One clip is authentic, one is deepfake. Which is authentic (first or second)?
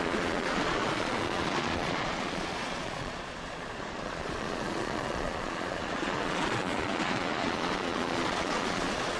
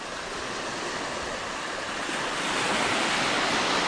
second